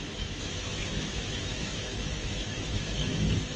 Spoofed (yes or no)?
yes